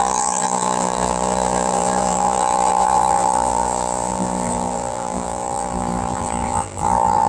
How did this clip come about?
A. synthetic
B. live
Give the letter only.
A